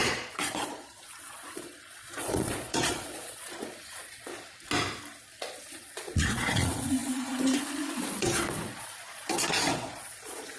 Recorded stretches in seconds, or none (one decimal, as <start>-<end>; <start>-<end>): 4.3-5.5